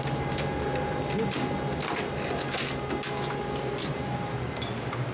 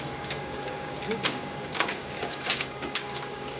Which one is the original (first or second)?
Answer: first